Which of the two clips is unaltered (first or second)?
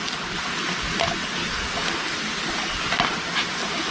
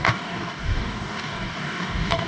first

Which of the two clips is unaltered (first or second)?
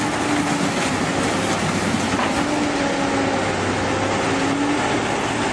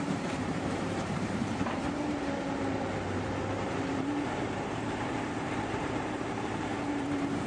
first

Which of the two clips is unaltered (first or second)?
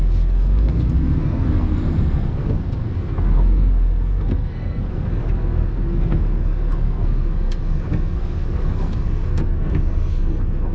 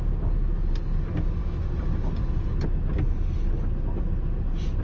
second